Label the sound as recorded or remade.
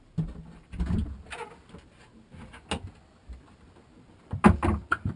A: recorded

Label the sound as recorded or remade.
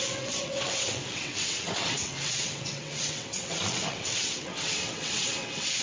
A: remade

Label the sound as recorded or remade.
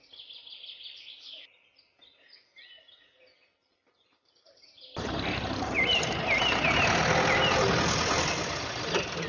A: recorded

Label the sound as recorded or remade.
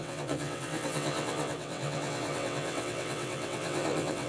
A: remade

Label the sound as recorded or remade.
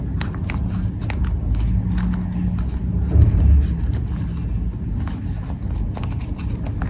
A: recorded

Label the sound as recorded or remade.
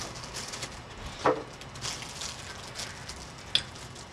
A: recorded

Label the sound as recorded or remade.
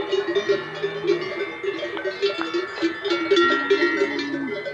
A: recorded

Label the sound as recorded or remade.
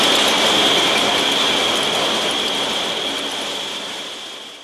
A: recorded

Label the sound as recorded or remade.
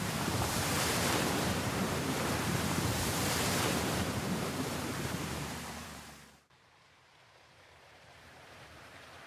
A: remade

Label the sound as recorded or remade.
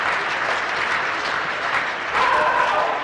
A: recorded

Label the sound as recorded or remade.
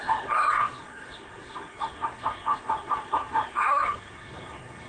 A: remade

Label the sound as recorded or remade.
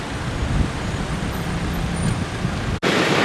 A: recorded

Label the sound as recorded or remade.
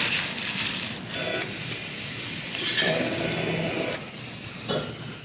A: recorded